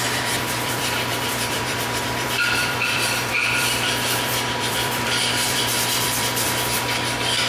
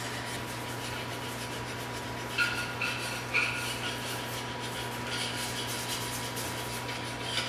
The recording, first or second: second